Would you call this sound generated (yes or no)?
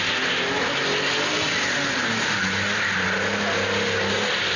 no